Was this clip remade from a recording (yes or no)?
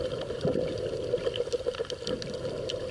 no